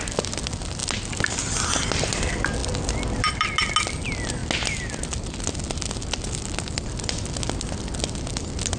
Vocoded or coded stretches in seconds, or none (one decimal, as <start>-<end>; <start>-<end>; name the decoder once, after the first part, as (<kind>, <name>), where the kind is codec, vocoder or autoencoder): none